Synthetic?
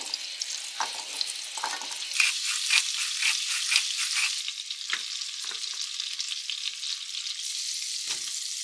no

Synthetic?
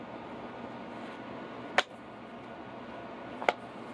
no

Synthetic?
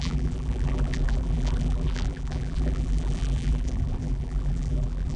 yes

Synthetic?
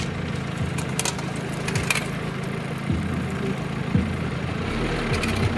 no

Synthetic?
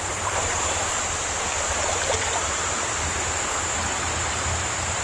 yes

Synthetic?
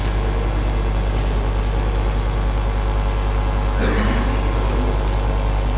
no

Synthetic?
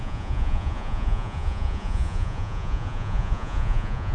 yes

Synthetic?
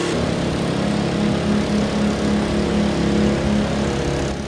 no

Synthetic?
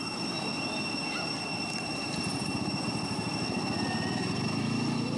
no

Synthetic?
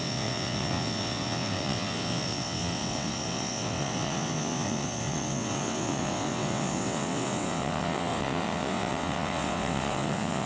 yes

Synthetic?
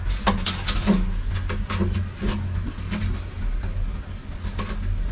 no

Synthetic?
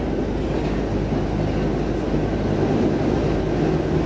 no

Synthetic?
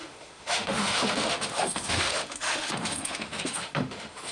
yes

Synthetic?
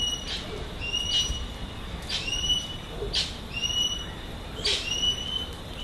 no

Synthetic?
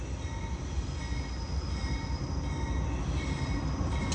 no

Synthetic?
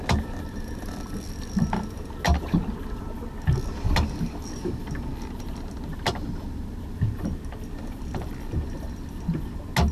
no